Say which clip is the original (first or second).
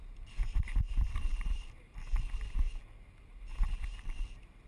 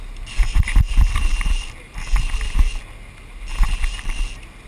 second